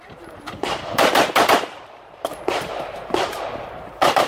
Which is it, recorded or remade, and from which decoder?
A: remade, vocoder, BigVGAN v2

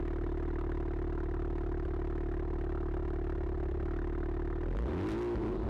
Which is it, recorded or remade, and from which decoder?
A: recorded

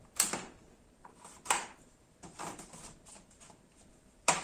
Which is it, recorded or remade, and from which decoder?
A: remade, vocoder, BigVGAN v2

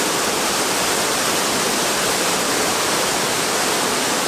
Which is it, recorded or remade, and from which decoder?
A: recorded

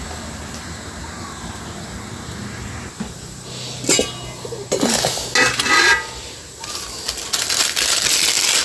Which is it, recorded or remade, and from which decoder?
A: recorded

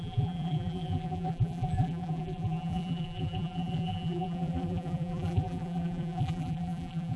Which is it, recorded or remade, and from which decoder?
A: remade, vocoder, BigVGAN v2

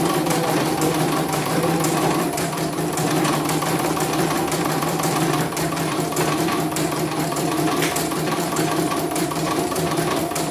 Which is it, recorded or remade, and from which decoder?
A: remade, vocoder, BigVGAN v2